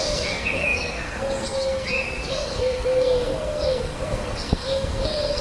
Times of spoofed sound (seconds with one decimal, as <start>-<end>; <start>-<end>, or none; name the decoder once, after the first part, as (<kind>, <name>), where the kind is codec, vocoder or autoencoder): 0.0-5.4 (codec, SNAC)